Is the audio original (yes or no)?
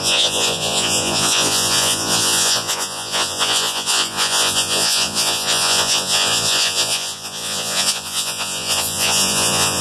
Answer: no